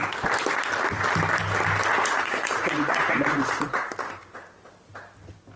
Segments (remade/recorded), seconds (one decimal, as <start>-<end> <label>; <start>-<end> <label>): 0.0-1.9 recorded; 1.9-3.9 remade; 3.9-5.6 recorded